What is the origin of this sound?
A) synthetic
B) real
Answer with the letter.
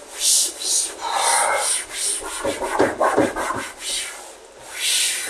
B